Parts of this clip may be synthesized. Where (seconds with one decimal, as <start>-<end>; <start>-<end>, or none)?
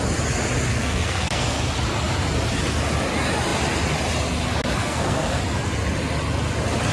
0.7-1.6; 4.8-5.4